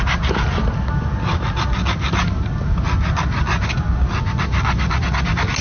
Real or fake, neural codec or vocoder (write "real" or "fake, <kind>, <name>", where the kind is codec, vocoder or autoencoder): real